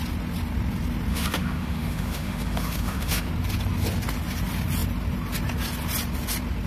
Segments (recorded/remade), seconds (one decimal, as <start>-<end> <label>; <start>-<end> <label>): 0.0-1.1 recorded; 1.1-3.3 remade; 3.3-6.7 recorded